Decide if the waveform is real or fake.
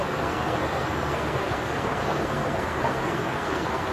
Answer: fake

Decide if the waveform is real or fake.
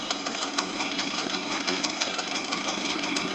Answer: fake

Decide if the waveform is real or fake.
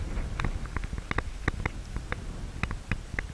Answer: real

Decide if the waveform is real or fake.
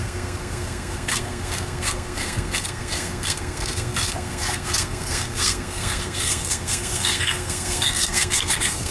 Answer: fake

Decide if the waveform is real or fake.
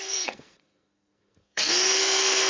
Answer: fake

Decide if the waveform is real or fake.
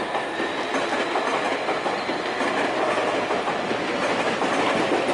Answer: real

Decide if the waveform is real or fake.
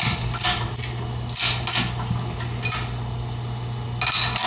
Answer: real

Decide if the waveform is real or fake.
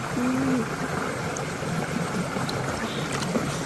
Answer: real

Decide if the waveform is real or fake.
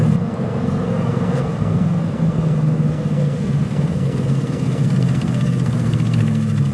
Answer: fake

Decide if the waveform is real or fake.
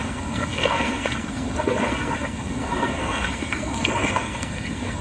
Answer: fake